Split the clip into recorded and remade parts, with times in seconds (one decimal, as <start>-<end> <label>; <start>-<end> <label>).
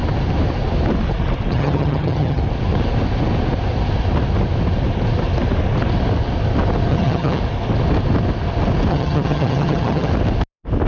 0.0-1.5 recorded; 1.5-2.4 remade; 2.4-6.9 recorded; 6.9-7.4 remade; 7.4-8.9 recorded; 8.9-10.1 remade; 10.1-10.9 recorded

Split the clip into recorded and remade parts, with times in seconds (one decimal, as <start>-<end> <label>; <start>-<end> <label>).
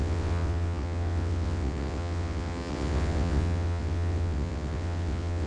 0.0-5.5 remade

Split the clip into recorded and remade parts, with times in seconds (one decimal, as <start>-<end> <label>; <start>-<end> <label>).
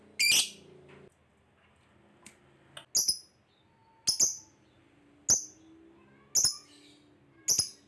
0.0-7.9 recorded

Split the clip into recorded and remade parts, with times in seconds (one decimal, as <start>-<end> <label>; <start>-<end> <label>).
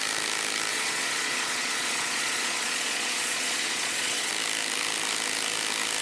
0.0-0.7 recorded; 0.7-4.3 remade; 4.3-6.0 recorded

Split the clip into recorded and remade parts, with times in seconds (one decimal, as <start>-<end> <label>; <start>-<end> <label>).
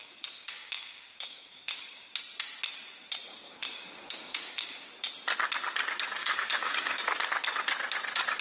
0.0-2.1 remade; 2.1-3.3 recorded; 3.3-4.9 remade; 4.9-6.2 recorded; 6.2-7.0 remade; 7.0-8.4 recorded